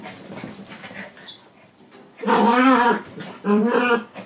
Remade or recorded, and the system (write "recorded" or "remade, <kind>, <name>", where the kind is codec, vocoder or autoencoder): remade, vocoder, BigVGAN v2